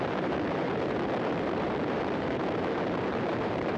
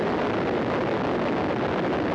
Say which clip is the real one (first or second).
second